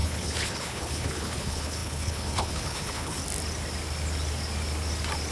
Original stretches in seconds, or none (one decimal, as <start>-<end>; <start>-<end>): 3.2-5.3